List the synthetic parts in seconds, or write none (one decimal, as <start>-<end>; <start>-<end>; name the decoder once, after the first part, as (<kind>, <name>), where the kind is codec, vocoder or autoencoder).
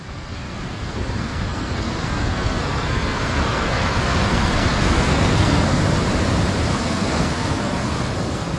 0.0-5.8 (codec, SNAC); 6.7-8.6